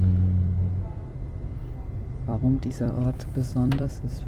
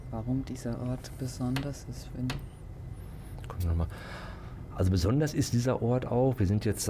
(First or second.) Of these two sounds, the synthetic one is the first